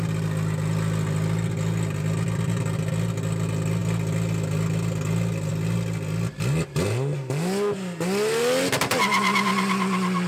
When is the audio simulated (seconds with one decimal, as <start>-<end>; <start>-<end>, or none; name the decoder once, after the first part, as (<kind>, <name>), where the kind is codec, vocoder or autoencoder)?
none